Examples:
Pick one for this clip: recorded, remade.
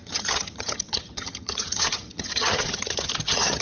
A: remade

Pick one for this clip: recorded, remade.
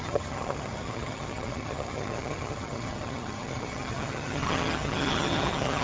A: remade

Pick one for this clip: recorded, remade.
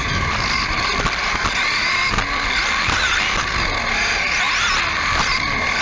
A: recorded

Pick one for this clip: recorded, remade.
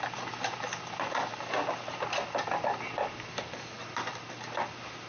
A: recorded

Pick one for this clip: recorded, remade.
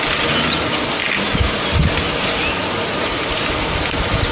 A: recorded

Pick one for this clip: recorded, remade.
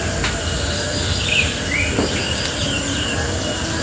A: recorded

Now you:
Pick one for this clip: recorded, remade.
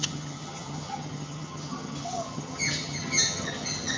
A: remade